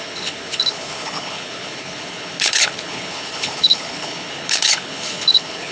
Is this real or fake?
fake